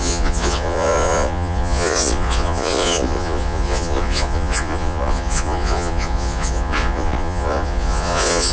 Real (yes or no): no